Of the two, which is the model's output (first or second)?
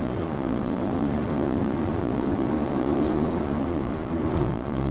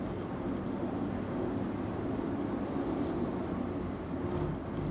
first